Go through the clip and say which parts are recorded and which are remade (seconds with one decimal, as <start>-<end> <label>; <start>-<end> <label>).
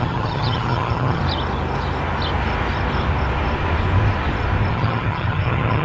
0.0-1.2 remade; 1.2-4.7 recorded; 4.7-5.8 remade